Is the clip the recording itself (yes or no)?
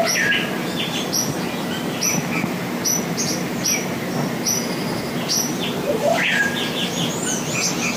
yes